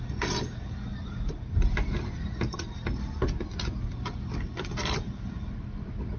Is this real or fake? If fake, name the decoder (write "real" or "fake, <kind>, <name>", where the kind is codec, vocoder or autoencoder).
real